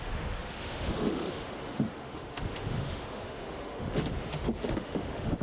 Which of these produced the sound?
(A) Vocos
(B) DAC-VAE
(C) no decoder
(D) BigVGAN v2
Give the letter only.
B